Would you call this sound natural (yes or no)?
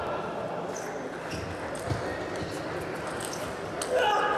yes